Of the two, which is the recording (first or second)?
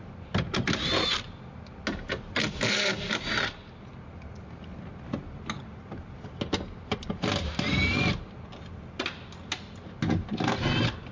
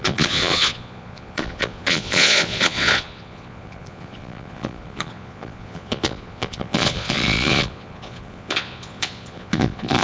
first